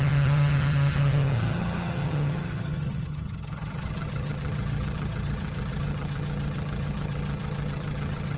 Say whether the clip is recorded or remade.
remade